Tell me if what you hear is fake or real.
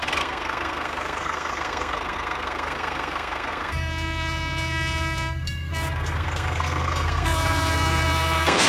fake